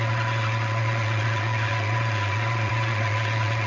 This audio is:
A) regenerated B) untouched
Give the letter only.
A